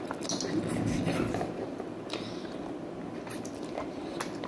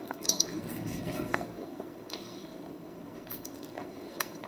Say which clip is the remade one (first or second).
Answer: second